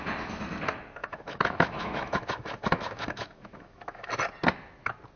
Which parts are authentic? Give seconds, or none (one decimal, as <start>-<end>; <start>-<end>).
0.0-1.0; 4.1-5.2